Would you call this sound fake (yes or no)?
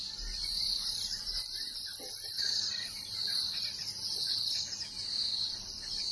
no